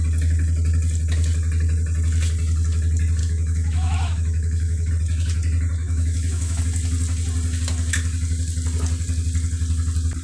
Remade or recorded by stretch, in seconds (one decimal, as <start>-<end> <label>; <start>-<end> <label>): 0.0-3.2 recorded; 3.2-4.9 remade; 4.9-5.8 recorded; 5.8-6.6 remade; 6.6-10.2 recorded